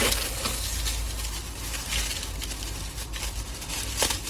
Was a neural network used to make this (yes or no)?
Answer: no